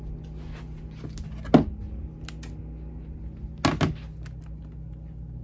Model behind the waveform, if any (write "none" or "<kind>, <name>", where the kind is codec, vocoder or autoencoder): none